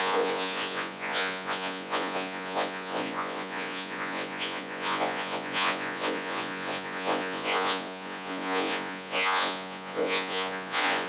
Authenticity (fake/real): fake